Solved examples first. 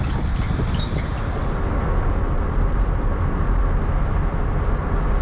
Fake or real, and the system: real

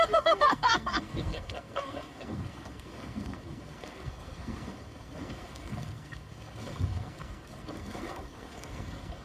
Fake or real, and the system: fake, codec, SNAC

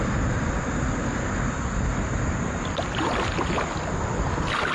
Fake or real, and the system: real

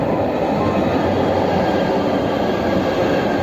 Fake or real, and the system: real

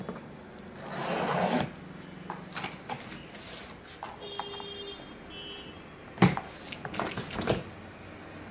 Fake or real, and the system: real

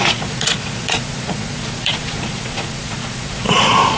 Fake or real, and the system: fake, vocoder, Vocos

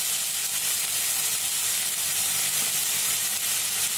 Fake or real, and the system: real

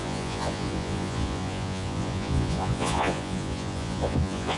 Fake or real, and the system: fake, vocoder, Vocos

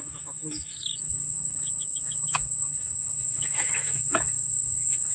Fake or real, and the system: fake, autoencoder, DAC-VAE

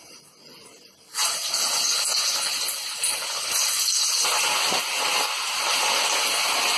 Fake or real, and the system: real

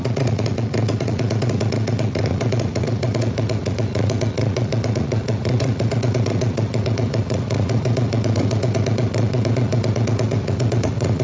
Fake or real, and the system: fake, vocoder, Vocos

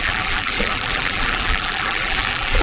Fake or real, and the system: fake, vocoder, BigVGAN v2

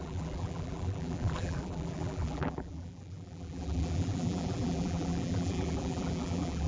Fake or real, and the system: fake, vocoder, BigVGAN v2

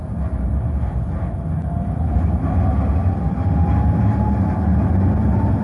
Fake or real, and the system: real